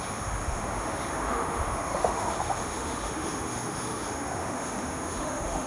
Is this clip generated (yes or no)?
yes